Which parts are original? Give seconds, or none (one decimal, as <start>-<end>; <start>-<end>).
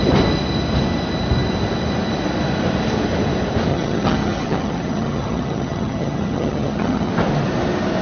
0.0-3.7; 7.1-8.0